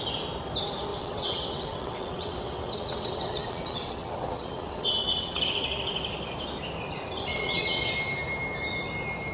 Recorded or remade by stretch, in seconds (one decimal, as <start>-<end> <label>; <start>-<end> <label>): 0.0-0.9 recorded; 0.9-5.4 remade; 5.4-7.3 recorded; 7.3-7.9 remade; 7.9-9.3 recorded